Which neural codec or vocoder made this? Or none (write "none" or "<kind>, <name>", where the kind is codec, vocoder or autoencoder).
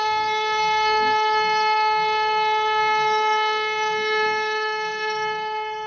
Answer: codec, SNAC